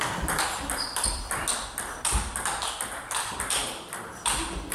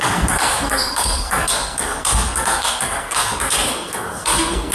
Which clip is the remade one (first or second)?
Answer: second